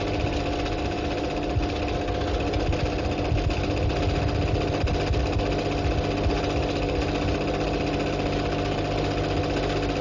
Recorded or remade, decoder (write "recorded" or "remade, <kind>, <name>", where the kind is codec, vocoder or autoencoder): recorded